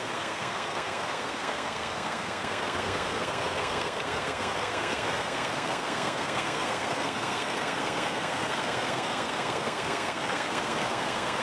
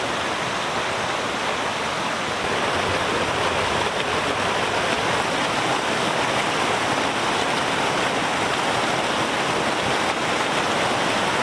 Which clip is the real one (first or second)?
second